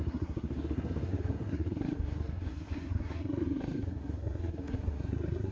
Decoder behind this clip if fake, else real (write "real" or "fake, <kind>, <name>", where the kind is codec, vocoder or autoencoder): fake, codec, SNAC